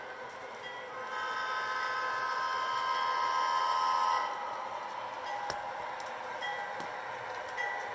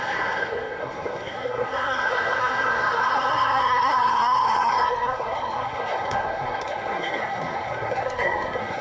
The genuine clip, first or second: first